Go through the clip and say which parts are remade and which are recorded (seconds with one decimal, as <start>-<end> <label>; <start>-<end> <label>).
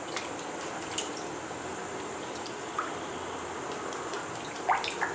0.0-5.1 recorded